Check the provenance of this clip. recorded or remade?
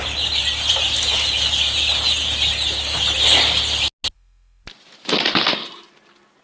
recorded